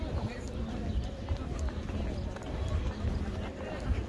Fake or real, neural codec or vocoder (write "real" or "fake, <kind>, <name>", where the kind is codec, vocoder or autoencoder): real